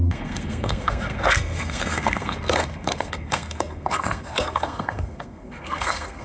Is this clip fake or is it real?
fake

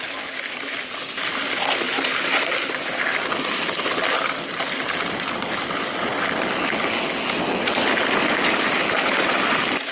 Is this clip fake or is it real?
real